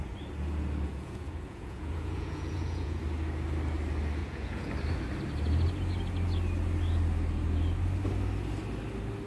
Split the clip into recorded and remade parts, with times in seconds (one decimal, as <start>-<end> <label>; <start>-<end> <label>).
0.0-0.9 recorded; 0.9-3.0 remade; 3.0-4.2 recorded; 4.2-4.7 remade; 4.7-9.3 recorded